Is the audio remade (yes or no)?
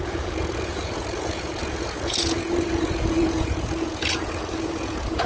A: yes